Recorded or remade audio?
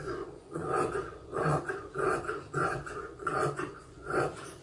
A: remade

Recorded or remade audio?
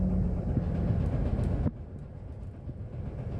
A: recorded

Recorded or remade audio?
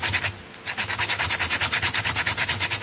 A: recorded